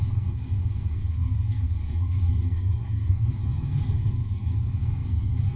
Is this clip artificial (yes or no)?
yes